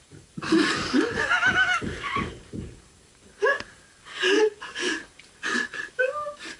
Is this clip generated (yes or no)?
yes